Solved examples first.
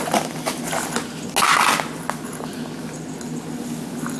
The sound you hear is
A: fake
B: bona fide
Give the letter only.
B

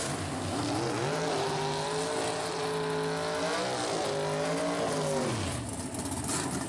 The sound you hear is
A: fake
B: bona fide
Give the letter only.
B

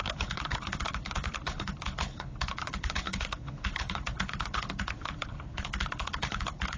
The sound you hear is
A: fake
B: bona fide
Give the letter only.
A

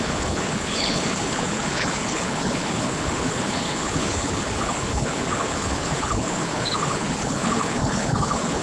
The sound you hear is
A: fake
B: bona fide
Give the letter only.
A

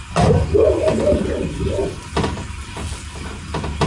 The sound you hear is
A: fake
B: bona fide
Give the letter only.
B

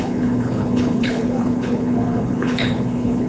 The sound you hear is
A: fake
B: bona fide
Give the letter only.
A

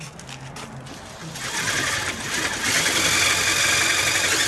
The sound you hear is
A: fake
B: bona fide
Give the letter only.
B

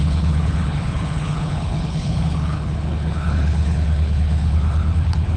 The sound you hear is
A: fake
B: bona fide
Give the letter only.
A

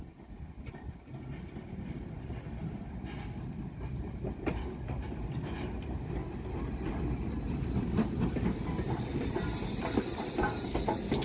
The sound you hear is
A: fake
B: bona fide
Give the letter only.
B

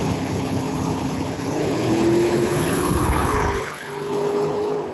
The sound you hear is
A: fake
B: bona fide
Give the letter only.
A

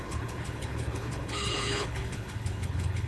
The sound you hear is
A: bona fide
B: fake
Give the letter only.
B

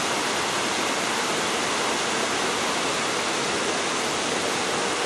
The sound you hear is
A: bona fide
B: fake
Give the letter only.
A